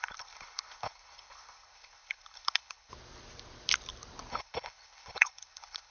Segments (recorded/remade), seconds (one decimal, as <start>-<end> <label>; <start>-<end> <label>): 0.0-2.9 remade; 2.9-4.3 recorded; 4.3-5.9 remade